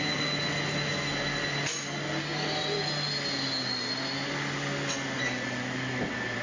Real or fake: real